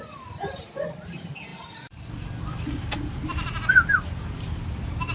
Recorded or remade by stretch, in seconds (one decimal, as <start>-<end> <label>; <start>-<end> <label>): 0.0-5.1 recorded